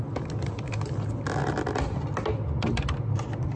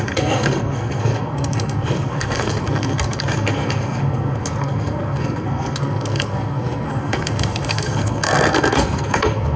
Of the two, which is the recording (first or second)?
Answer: first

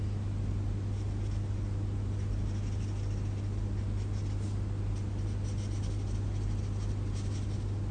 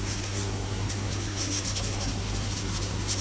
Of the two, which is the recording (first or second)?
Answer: first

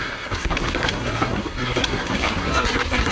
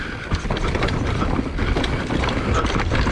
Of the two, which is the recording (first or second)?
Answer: second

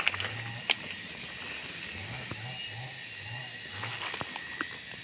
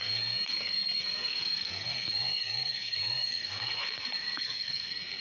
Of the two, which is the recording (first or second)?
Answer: first